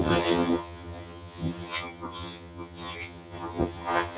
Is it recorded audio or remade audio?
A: remade